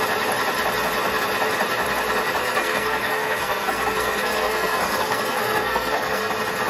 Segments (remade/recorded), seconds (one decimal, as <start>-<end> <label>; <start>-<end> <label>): 0.0-2.4 recorded; 2.4-6.3 remade; 6.3-6.7 recorded